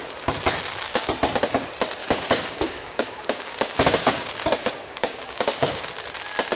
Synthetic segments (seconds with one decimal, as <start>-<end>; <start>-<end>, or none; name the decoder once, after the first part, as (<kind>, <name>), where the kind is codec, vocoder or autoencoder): 2.0-5.9 (codec, DAC)